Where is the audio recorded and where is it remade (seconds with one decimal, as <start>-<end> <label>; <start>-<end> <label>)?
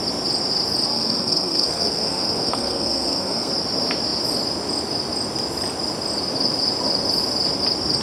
0.0-0.9 recorded; 0.9-3.5 remade; 3.5-8.0 recorded